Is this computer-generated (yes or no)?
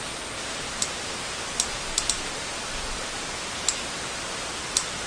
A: no